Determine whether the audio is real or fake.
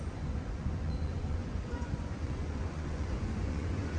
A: fake